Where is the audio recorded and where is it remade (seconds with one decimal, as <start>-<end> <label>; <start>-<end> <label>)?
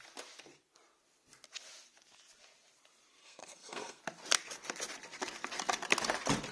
0.0-3.2 recorded; 3.2-4.0 remade; 4.0-6.5 recorded